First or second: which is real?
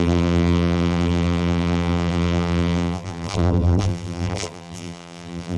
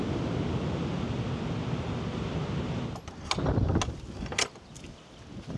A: second